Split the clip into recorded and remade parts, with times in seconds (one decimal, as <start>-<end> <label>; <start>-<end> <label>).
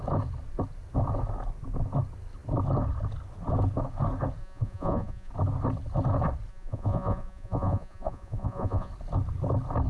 0.0-4.4 recorded; 4.4-5.3 remade; 5.3-6.5 recorded; 6.5-8.9 remade; 8.9-9.9 recorded